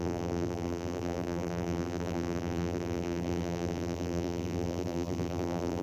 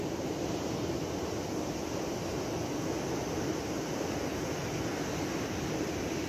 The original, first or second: second